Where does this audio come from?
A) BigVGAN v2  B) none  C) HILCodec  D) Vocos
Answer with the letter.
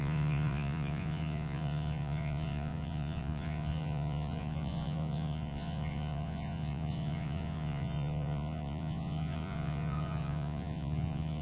D